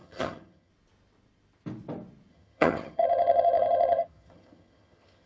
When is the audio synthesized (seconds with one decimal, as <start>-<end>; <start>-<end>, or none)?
0.0-0.7; 2.3-5.3